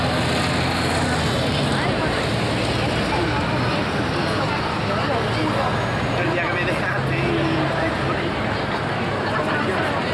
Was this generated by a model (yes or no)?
no